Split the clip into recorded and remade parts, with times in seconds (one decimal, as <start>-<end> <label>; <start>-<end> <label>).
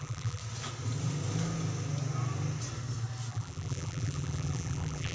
0.0-0.4 remade; 0.4-3.3 recorded; 3.3-5.1 remade